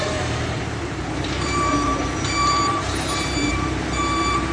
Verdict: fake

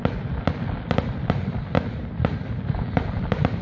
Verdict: real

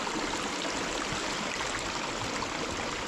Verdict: real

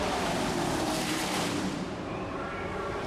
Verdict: fake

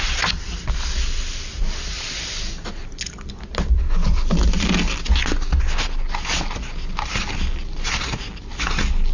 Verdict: real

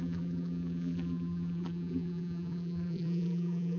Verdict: fake